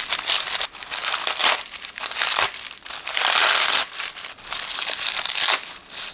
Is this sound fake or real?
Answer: fake